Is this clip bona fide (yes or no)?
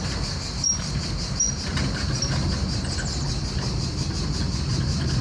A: yes